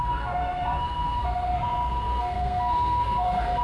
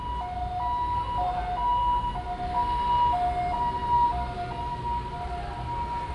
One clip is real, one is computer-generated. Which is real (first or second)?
second